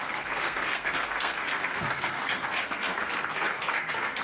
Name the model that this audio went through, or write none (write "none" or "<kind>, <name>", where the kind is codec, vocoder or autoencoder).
codec, SNAC